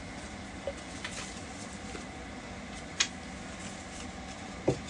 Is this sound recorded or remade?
recorded